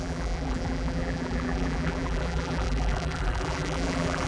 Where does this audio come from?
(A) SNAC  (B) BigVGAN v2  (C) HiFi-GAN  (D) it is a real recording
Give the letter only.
B